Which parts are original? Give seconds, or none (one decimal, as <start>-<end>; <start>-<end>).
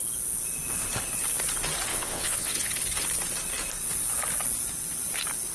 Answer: 0.0-1.9; 3.0-5.5